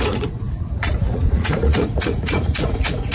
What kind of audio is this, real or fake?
fake